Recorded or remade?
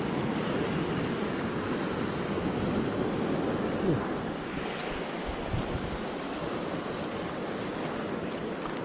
recorded